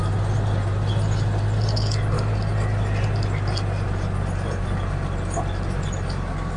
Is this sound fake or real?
real